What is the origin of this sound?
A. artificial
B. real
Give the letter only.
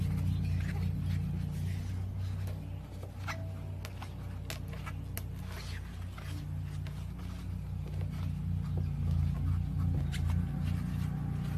B